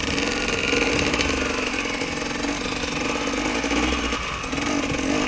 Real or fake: real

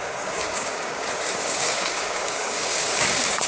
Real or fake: fake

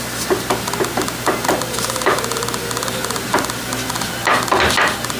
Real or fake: real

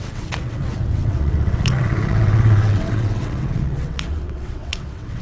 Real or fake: fake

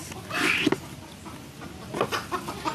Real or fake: real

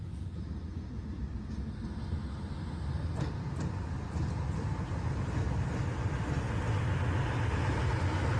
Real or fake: real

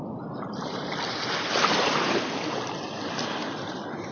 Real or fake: real